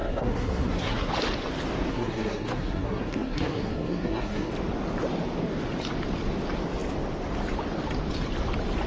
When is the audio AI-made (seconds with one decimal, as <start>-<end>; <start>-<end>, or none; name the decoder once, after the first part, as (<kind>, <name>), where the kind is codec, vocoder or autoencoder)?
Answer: 0.0-1.1 (codec, SNAC); 1.9-4.5